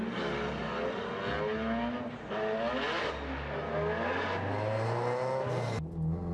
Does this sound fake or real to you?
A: real